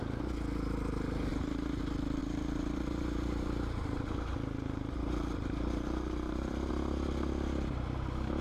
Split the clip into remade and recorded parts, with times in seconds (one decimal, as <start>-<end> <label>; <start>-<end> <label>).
0.0-1.3 recorded; 1.3-1.8 remade; 1.8-2.2 recorded; 2.2-6.7 remade; 6.7-8.4 recorded